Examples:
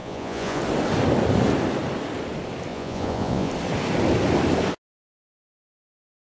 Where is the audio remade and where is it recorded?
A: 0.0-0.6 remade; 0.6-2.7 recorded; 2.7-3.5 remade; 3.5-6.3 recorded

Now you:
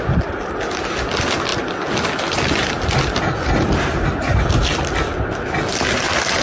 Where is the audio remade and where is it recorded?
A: 0.0-6.4 recorded

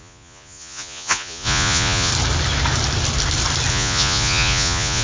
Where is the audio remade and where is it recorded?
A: 0.0-2.1 remade; 2.1-3.7 recorded; 3.7-5.0 remade

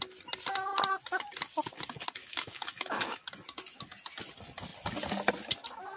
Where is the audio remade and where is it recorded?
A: 0.0-2.2 recorded; 2.2-3.2 remade; 3.2-6.0 recorded